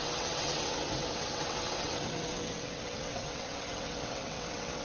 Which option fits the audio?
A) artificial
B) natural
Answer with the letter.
A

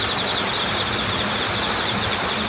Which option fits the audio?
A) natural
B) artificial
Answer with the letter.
A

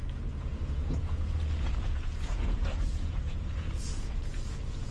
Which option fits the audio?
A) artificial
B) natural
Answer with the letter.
A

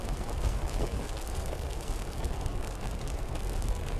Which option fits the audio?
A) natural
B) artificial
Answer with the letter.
B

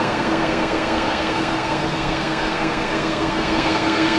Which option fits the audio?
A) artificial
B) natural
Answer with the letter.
A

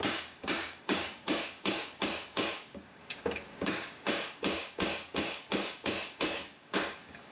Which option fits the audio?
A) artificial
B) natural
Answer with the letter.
A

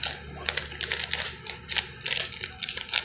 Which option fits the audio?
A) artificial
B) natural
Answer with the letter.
B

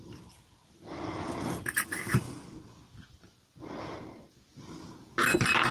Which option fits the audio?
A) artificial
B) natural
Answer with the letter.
B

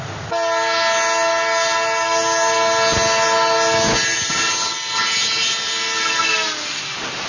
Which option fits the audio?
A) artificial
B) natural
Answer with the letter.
B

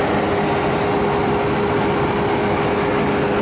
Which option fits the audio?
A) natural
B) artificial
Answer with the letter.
A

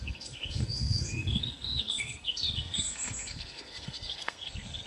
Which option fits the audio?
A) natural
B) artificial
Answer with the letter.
B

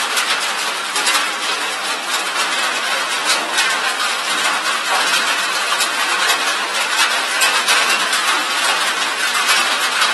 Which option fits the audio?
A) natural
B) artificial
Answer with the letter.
A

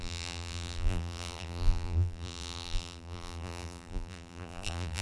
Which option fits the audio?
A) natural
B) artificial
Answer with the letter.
B